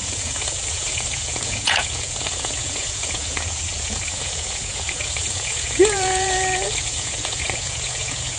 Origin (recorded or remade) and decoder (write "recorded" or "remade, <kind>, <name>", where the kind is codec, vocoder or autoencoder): remade, vocoder, Vocos